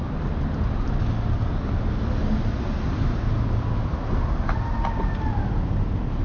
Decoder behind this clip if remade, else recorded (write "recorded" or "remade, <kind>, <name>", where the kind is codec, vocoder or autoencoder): recorded